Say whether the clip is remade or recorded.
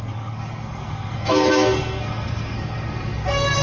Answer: remade